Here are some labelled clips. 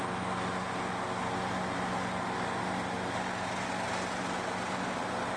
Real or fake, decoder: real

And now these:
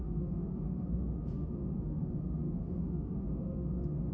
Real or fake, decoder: fake, autoencoder, DAC-VAE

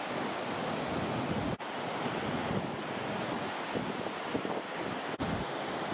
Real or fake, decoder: real